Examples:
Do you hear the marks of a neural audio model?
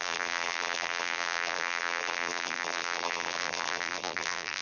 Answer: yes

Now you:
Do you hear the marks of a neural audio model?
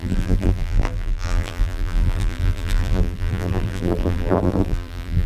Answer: yes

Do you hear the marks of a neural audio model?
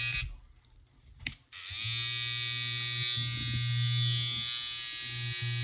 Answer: no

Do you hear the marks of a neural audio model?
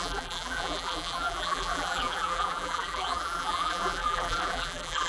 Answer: yes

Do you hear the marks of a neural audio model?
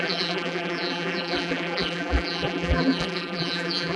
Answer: yes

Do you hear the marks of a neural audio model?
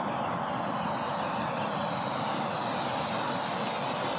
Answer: no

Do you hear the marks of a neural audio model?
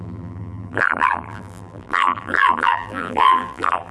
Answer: yes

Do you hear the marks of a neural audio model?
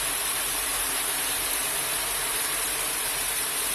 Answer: yes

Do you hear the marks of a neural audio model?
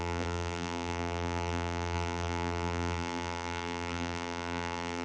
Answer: yes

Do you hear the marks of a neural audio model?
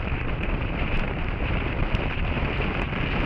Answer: yes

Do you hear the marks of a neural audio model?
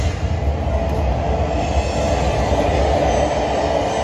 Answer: no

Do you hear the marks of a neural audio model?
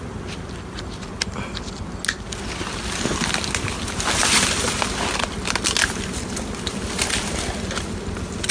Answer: no